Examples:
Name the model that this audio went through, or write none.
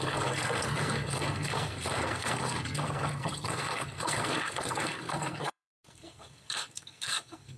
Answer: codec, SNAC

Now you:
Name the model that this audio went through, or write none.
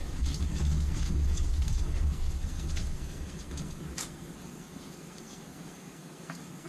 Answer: codec, SNAC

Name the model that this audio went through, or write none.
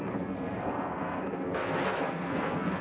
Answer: codec, SNAC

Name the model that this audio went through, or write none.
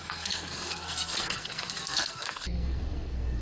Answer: codec, SNAC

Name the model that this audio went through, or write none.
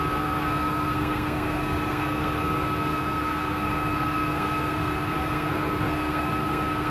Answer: codec, SNAC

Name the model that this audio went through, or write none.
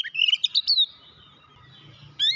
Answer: none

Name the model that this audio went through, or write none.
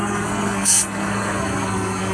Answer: codec, SNAC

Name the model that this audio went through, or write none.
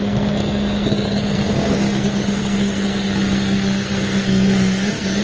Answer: codec, SNAC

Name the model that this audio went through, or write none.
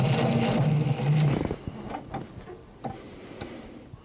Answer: none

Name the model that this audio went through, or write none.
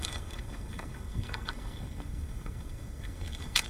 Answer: codec, SNAC